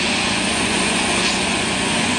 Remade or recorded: remade